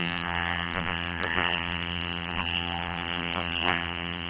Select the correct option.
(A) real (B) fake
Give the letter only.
B